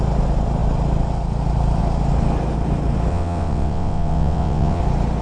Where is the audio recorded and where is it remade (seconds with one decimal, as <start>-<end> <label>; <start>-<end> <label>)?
0.0-3.1 recorded; 3.1-4.8 remade; 4.8-5.2 recorded